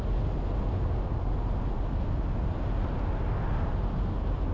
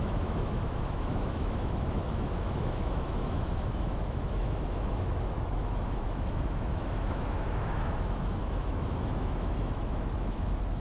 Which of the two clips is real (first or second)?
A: first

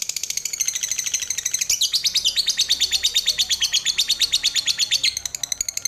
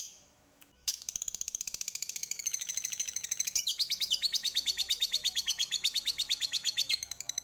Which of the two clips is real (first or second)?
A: first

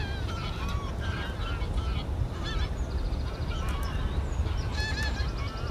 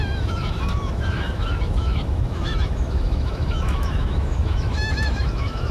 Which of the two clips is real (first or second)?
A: first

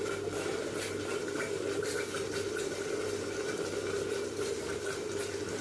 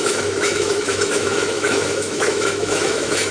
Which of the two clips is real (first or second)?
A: first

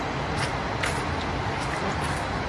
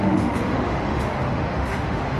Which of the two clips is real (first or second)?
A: first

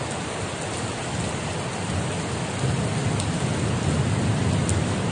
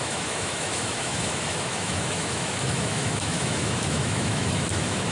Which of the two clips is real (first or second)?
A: first